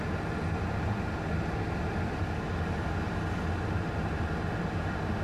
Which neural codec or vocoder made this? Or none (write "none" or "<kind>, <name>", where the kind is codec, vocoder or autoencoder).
none